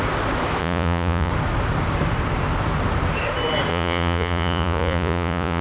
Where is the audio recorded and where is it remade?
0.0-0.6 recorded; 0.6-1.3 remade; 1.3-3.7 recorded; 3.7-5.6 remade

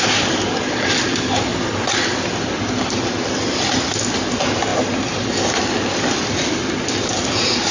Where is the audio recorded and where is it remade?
0.0-7.7 recorded

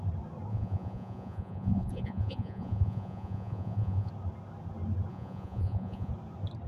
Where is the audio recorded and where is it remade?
0.0-0.5 recorded; 0.5-4.1 remade; 4.1-5.1 recorded; 5.1-6.1 remade; 6.1-6.7 recorded

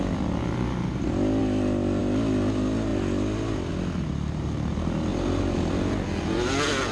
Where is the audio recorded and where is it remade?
0.0-5.1 recorded; 5.1-5.7 remade; 5.7-6.9 recorded